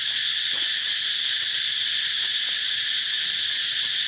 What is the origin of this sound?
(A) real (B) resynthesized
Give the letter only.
A